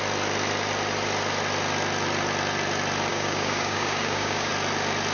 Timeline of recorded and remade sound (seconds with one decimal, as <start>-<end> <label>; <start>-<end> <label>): 0.0-3.1 recorded; 3.1-4.5 remade; 4.5-5.1 recorded